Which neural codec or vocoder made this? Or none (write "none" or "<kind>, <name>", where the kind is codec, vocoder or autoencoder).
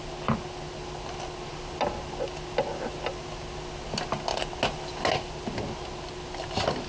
none